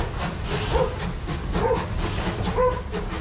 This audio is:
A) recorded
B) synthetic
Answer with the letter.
A